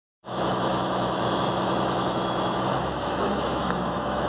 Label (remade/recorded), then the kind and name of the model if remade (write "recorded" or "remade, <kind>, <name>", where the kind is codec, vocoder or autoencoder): remade, autoencoder, DAC-VAE